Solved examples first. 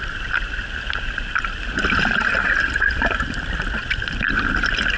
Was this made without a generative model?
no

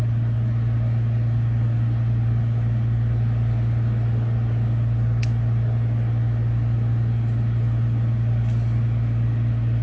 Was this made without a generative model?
yes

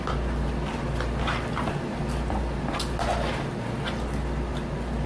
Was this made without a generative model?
yes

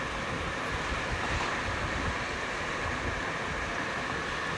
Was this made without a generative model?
yes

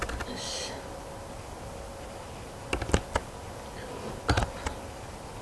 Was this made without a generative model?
yes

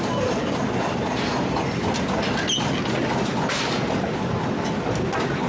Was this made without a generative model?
yes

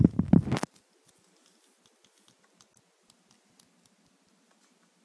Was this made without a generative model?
yes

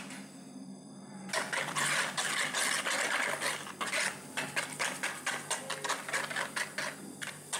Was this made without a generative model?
yes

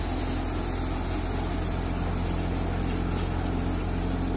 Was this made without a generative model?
yes